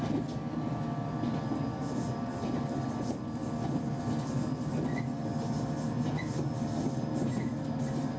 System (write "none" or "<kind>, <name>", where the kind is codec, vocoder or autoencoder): none